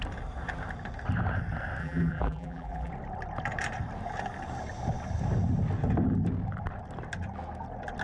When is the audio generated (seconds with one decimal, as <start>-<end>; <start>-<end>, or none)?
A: 1.8-2.9